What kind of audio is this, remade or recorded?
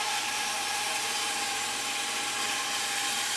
recorded